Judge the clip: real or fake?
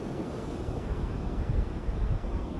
fake